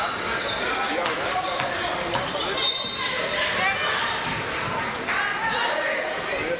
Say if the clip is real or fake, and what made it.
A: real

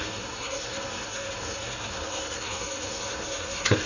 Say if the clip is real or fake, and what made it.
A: fake, codec, SNAC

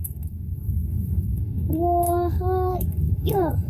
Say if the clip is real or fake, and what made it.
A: fake, codec, SNAC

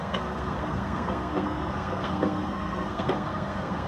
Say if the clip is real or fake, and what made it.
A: fake, codec, SNAC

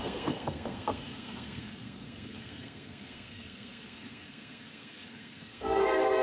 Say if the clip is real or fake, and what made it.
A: fake, codec, SNAC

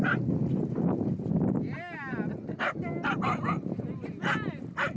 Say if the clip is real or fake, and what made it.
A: real